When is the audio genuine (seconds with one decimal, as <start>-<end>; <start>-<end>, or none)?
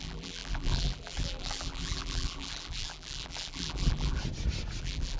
4.2-4.8